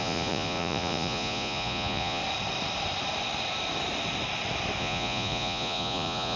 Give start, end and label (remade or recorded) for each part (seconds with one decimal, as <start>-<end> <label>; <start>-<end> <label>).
0.0-2.2 remade; 2.2-4.8 recorded; 4.8-6.4 remade